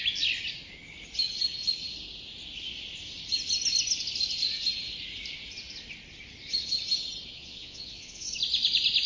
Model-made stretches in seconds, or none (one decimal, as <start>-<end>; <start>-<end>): 7.3-8.3